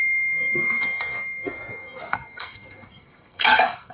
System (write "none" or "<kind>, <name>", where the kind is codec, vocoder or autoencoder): codec, SNAC